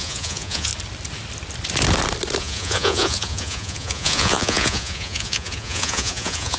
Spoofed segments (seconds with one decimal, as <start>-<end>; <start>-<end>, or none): 0.0-0.7; 2.4-6.6